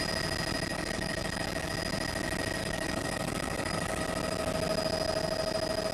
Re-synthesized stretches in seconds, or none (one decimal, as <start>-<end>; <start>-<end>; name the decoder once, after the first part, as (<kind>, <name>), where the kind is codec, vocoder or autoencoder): 0.7-1.7 (codec, DAC); 2.6-4.0